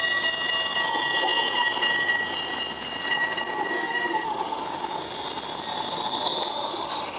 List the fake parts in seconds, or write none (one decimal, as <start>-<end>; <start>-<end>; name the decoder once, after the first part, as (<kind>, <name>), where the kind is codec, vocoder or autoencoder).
3.7-4.6 (autoencoder, DAC-VAE); 6.5-7.2